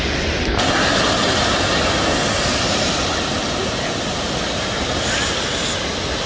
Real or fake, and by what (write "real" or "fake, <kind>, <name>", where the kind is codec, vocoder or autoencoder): real